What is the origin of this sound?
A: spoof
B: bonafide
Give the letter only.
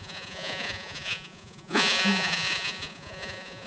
A